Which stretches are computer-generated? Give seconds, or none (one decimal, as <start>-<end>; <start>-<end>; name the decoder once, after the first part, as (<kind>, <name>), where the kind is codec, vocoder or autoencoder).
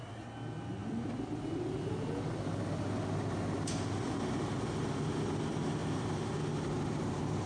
none